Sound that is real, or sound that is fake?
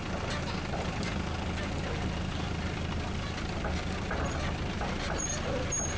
real